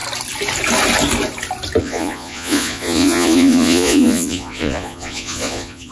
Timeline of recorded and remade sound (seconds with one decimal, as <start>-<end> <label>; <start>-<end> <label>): 0.0-1.8 recorded; 1.8-5.9 remade